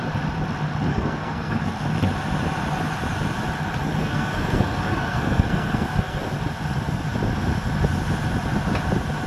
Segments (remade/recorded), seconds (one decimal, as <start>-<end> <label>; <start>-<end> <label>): 0.0-0.9 recorded; 0.9-1.7 remade; 1.7-4.0 recorded; 4.0-6.2 remade; 6.2-9.3 recorded